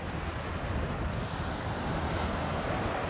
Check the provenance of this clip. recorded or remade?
recorded